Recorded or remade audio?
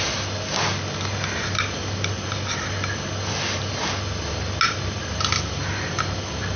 recorded